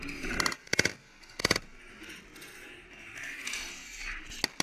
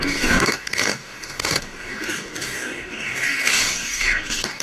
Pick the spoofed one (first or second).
second